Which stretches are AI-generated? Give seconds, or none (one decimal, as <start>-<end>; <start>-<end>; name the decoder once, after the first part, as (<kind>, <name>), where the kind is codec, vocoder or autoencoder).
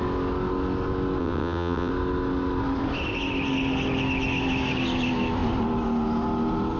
1.2-1.9 (vocoder, WaveNeXt)